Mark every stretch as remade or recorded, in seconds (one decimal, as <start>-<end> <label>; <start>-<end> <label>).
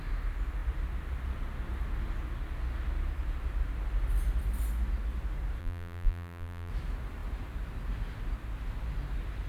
0.0-5.6 recorded; 5.6-6.7 remade; 6.7-9.5 recorded